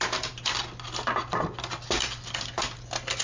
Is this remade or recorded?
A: recorded